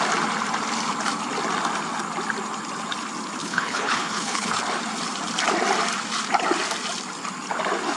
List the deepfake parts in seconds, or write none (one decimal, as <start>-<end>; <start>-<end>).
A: 3.4-4.6